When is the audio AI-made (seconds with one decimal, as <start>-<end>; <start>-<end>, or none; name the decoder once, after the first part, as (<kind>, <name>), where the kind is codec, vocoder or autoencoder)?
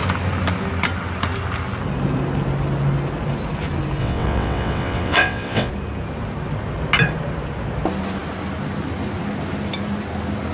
4.0-5.7 (vocoder, WaveNeXt)